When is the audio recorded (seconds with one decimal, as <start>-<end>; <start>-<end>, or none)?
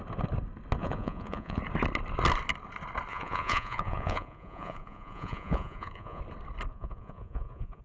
0.0-0.8; 1.6-3.1; 6.2-6.7